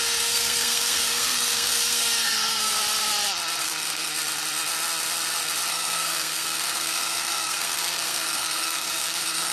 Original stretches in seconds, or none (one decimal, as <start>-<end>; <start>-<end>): 2.7-3.6; 4.1-5.7